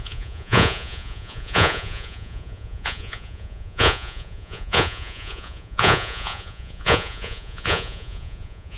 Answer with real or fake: fake